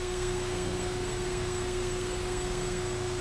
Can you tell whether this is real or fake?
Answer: fake